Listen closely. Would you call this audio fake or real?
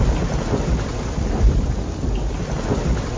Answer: real